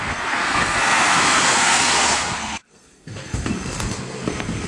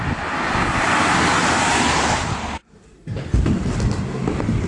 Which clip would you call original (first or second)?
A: second